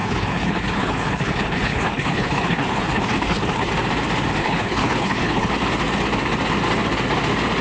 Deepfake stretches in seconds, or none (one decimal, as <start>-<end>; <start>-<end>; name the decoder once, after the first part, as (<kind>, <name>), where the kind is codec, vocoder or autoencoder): 0.0-3.7 (codec, HILCodec); 4.4-5.5